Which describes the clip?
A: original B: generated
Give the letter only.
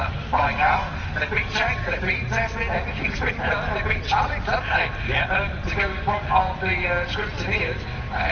A